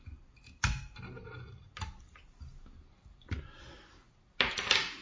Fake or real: real